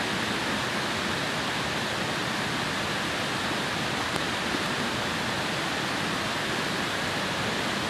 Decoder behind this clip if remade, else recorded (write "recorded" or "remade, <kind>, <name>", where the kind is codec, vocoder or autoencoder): recorded